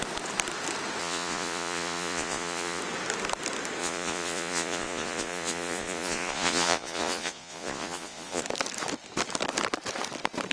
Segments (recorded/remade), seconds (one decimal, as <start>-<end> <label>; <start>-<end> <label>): 0.0-1.0 recorded; 1.0-2.8 remade; 2.8-3.8 recorded; 3.8-8.4 remade; 8.4-10.5 recorded

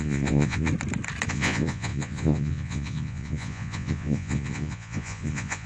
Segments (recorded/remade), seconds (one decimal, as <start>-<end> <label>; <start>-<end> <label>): 0.0-0.7 remade; 0.7-1.3 recorded; 1.3-5.7 remade

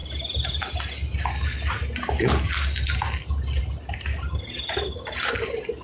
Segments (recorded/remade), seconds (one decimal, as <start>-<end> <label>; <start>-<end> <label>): 0.0-5.8 recorded

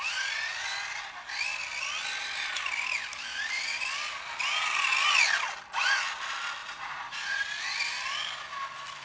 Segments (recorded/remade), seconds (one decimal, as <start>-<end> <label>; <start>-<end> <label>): 0.0-6.6 recorded; 6.6-7.5 remade; 7.5-9.0 recorded